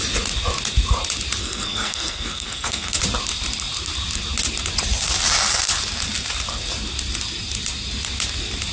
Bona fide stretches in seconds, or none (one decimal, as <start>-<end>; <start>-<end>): 0.0-1.4; 3.0-8.7